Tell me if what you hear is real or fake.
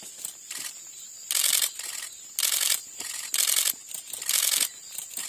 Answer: real